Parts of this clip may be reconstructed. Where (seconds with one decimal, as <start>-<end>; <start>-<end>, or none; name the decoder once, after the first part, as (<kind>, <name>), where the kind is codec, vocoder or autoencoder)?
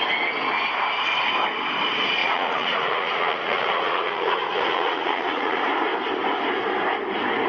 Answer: 2.2-5.6 (vocoder, Vocos)